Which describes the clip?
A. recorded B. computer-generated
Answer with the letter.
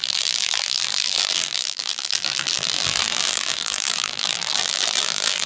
B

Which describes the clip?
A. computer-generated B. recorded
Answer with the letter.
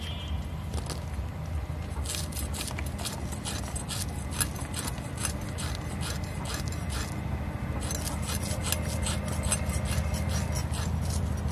B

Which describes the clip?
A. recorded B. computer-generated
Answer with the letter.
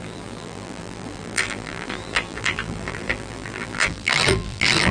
B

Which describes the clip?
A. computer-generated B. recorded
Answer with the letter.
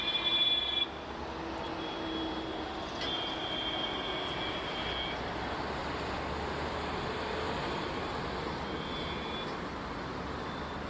B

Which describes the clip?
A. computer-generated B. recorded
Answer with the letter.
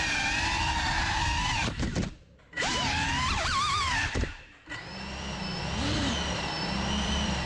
A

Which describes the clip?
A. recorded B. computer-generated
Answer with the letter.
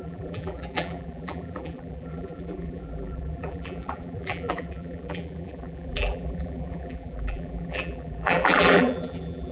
B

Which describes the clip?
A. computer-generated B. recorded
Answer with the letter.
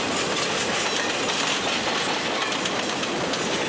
B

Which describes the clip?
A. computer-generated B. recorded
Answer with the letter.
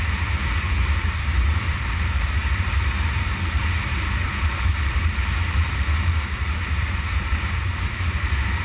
A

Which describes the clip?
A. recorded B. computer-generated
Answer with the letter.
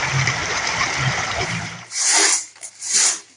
B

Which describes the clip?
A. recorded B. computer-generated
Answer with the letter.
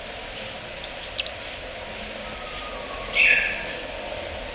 A